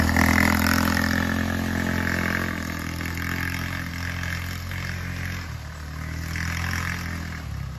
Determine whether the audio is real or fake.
real